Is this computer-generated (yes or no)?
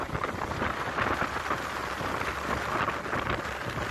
yes